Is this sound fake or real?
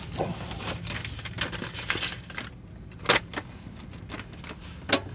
real